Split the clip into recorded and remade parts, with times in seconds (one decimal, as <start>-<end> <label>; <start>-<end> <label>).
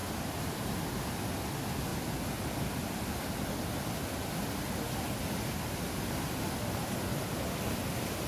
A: 0.0-1.4 remade; 1.4-8.3 recorded